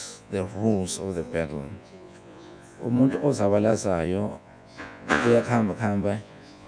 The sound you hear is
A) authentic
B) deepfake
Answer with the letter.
B